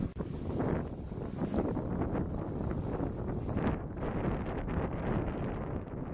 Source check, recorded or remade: recorded